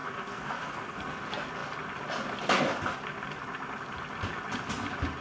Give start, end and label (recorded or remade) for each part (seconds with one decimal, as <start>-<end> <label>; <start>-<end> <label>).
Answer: 0.0-1.2 remade; 1.2-5.2 recorded